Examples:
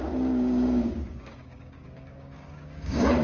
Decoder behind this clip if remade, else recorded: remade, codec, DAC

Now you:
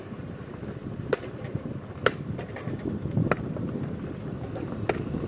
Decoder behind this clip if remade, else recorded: recorded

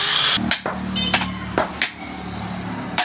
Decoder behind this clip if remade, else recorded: recorded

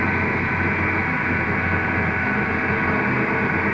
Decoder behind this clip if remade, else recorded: recorded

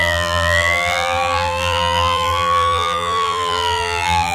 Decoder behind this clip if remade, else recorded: remade, vocoder, BigVGAN v2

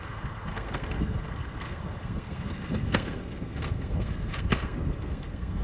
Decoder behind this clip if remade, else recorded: remade, codec, SNAC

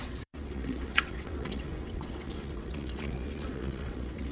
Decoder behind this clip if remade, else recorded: remade, vocoder, WaveNeXt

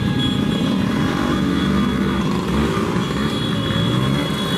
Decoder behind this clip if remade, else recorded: recorded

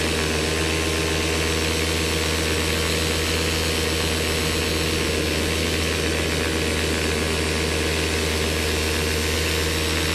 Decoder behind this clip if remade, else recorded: recorded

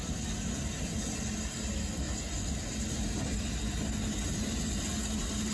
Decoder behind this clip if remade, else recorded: recorded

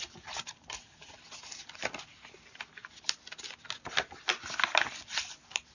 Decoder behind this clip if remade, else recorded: recorded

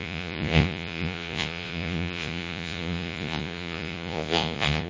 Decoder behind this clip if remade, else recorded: remade, vocoder, Vocos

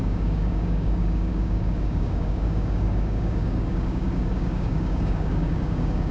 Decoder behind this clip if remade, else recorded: remade, codec, DAC